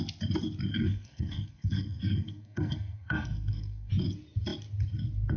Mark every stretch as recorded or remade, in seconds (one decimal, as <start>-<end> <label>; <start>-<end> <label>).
0.0-0.7 recorded; 0.7-3.9 remade; 3.9-5.4 recorded